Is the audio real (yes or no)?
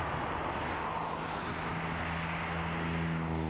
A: yes